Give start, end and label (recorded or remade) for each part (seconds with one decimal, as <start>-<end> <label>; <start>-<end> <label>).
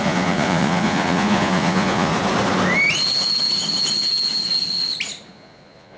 0.0-2.1 remade; 2.1-5.3 recorded; 5.3-6.0 remade